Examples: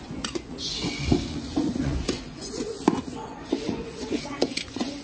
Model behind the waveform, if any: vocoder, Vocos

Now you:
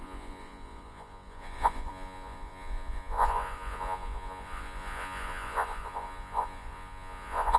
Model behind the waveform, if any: vocoder, Vocos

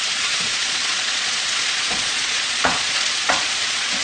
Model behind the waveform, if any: vocoder, Vocos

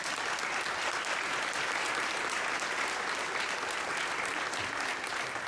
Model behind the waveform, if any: none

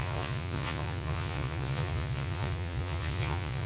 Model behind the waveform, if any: vocoder, Vocos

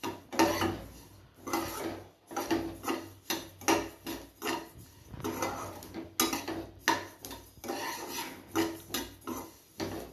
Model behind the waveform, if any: none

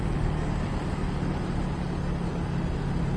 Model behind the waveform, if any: none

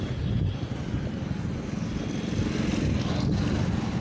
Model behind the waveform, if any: none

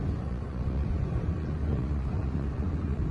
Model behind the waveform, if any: vocoder, Vocos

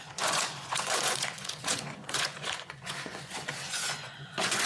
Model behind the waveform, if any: vocoder, Vocos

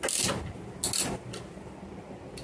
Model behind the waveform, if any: none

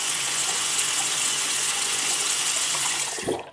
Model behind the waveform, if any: vocoder, Vocos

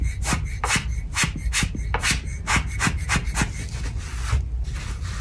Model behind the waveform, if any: none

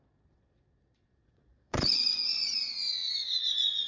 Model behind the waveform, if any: vocoder, Vocos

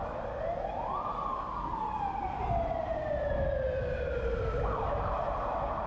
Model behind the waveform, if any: none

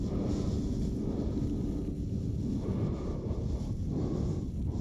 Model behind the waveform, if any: none